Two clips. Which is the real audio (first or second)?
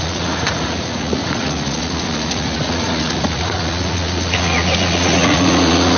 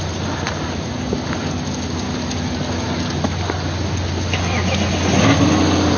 second